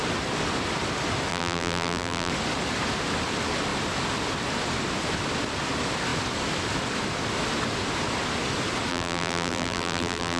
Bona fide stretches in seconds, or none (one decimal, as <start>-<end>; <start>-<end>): 0.0-1.3; 2.3-8.9